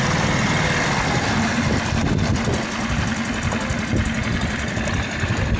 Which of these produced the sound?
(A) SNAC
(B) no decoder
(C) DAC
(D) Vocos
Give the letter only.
B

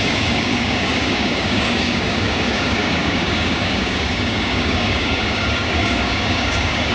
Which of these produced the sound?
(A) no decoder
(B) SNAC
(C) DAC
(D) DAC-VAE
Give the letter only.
C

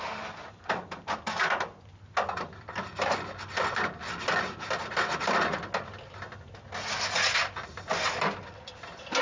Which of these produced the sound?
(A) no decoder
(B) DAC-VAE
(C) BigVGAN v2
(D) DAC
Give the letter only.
A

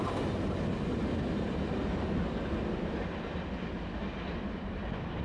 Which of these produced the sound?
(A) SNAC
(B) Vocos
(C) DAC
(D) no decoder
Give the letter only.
D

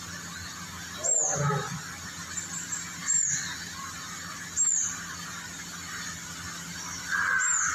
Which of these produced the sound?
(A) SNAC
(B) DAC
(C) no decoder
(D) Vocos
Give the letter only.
C